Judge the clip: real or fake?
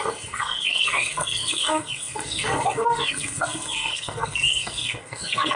fake